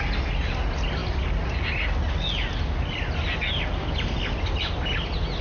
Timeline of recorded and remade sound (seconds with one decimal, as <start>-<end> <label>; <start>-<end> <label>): 0.0-5.4 recorded